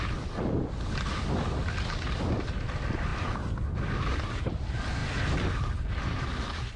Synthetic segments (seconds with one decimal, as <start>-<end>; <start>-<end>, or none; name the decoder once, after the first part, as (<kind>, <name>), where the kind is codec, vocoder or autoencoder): none